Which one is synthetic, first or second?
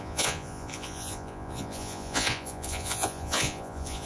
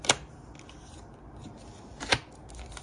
first